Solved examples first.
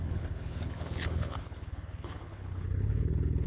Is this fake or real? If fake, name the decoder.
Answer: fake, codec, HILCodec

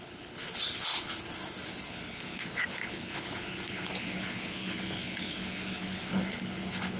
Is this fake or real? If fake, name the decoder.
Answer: fake, codec, HILCodec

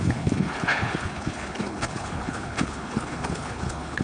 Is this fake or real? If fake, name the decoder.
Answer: fake, codec, HILCodec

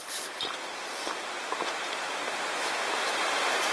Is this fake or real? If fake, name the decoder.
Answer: real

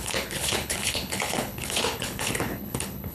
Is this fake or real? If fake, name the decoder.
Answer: fake, codec, HILCodec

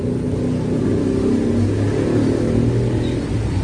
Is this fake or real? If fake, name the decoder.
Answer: real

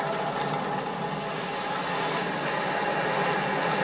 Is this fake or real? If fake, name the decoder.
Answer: real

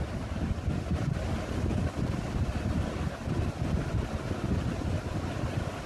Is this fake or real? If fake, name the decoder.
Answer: real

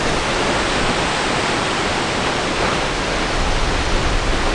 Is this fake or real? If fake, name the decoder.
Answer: real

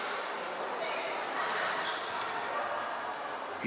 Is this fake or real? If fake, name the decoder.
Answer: real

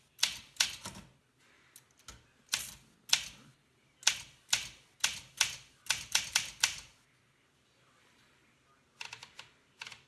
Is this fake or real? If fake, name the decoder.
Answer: real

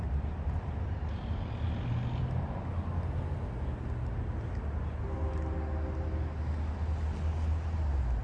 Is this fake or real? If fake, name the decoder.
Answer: real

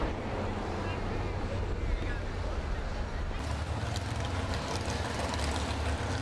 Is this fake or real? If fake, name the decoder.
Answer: real